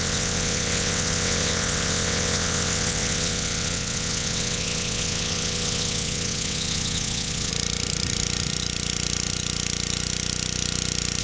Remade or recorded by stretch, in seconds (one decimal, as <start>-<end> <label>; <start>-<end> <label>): 0.0-7.5 remade; 7.5-11.2 recorded